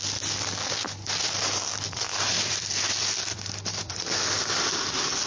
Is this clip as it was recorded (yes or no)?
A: no